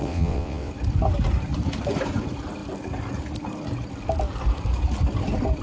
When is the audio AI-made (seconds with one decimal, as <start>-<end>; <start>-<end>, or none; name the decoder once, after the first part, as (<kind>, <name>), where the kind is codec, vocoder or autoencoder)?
0.0-0.7 (vocoder, WaveNeXt)